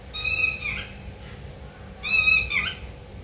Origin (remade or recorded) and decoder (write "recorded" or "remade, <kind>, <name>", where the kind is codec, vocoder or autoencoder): recorded